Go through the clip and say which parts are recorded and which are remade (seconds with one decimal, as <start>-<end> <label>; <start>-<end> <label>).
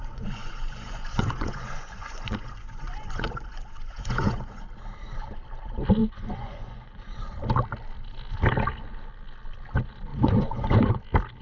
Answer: 0.0-4.6 remade; 4.6-6.0 recorded; 6.0-7.2 remade; 7.2-10.1 recorded; 10.1-11.0 remade; 11.0-11.4 recorded